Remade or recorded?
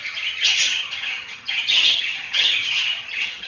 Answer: remade